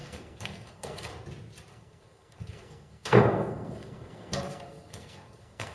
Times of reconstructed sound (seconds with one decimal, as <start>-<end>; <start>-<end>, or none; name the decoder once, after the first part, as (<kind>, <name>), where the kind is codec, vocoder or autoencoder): 0.0-1.1 (codec, SNAC); 1.7-5.7